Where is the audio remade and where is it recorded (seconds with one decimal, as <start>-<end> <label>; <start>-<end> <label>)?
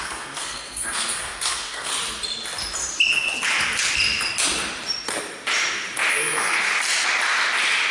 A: 0.0-1.9 remade; 1.9-6.1 recorded; 6.1-6.7 remade; 6.7-7.9 recorded